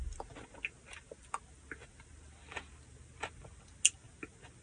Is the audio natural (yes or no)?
yes